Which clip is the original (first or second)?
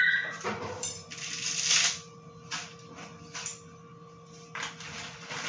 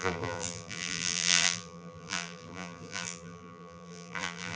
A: first